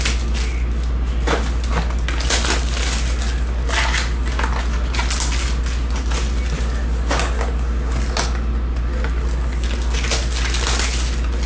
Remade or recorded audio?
recorded